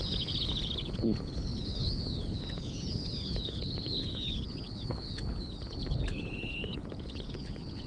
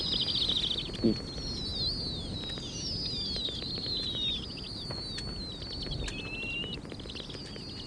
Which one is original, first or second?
second